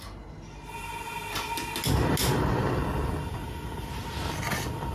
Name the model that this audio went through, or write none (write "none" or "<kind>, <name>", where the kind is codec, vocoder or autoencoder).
none